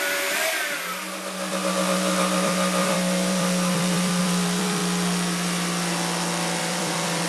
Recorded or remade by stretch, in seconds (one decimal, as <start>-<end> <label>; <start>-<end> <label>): 0.0-4.8 remade; 4.8-6.6 recorded; 6.6-7.3 remade

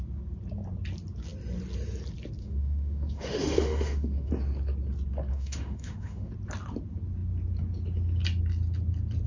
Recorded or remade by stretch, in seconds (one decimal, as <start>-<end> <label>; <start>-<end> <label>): 0.0-2.4 recorded; 2.4-4.3 remade; 4.3-5.3 recorded; 5.3-6.3 remade; 6.3-9.3 recorded